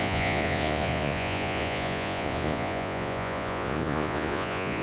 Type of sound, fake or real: fake